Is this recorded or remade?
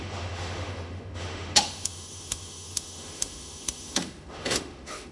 remade